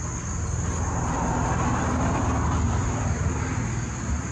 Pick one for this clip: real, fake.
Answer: real